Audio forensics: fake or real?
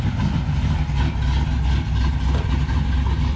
real